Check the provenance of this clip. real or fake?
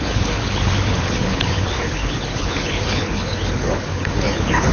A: fake